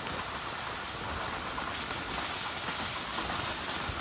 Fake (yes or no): no